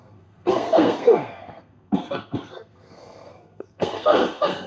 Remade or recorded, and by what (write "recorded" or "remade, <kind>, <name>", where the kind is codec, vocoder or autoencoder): remade, codec, SNAC